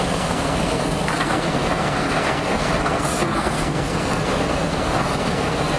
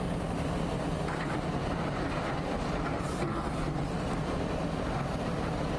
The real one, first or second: second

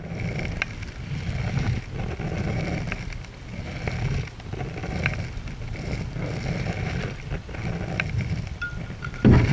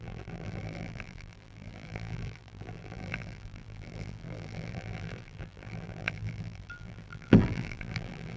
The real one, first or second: first